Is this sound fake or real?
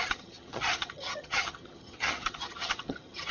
fake